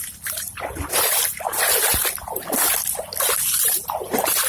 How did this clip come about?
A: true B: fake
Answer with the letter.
B